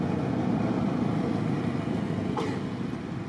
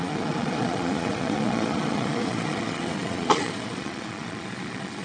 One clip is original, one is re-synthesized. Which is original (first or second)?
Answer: first